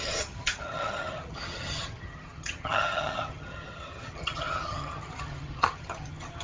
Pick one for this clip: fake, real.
fake